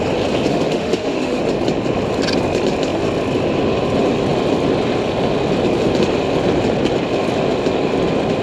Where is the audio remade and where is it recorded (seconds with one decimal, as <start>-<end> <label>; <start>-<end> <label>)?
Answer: 0.0-0.5 recorded; 0.5-1.4 remade; 1.4-8.4 recorded